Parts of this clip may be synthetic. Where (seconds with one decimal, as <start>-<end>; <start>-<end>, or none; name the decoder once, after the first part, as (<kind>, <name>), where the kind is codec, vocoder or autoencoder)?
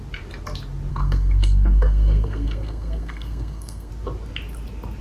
0.9-3.9 (codec, SNAC)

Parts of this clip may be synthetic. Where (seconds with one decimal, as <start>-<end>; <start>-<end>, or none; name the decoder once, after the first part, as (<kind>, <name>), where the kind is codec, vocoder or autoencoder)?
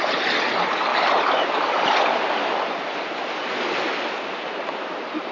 none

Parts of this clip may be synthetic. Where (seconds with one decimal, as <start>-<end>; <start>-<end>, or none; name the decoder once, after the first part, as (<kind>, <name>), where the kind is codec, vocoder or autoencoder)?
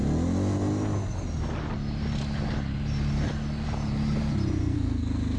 4.6-5.4 (codec, SNAC)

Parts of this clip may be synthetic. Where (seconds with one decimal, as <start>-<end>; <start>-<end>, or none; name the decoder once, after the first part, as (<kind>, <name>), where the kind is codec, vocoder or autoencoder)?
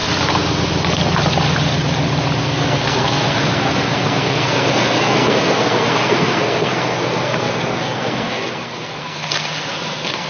2.4-10.3 (codec, SNAC)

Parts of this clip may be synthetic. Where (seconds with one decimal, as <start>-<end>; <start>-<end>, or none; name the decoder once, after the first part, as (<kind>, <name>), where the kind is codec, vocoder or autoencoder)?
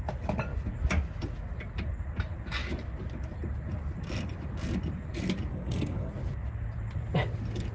5.5-6.1 (codec, SNAC)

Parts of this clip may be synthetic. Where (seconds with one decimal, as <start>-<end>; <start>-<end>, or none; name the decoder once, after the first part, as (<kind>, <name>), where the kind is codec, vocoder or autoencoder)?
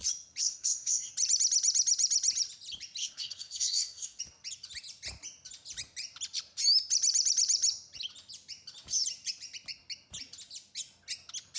0.4-1.1 (codec, SNAC); 3.0-4.2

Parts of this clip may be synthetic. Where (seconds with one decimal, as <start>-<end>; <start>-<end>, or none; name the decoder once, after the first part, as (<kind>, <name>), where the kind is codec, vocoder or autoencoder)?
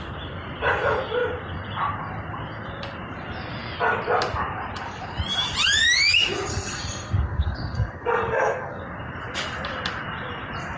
6.5-8.8 (codec, SNAC)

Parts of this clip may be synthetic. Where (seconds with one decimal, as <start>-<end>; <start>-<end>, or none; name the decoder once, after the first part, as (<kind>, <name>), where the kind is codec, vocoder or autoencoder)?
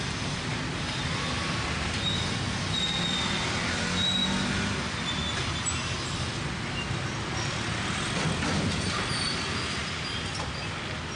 none